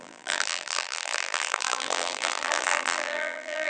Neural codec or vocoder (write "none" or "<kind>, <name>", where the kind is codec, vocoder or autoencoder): vocoder, BigVGAN v2